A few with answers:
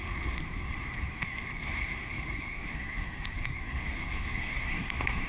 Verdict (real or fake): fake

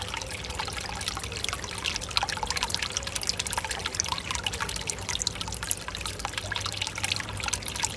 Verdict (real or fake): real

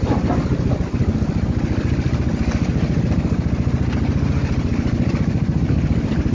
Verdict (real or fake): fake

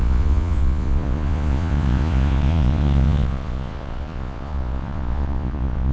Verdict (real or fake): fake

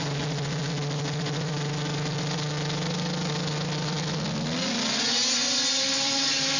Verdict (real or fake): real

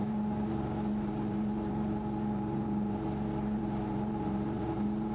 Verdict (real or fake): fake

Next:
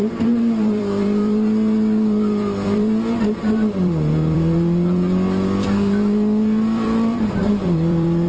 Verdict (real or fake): fake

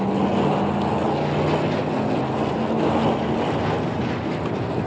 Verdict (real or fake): real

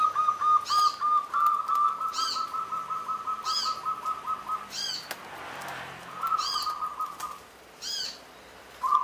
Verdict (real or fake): real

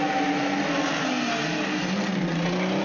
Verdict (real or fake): real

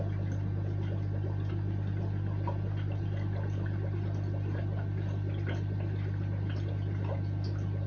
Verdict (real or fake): real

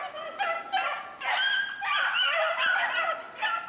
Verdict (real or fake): real